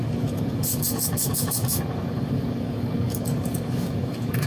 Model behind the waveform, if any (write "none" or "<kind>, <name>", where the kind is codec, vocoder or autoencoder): codec, DAC